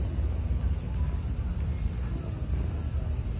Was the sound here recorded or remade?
recorded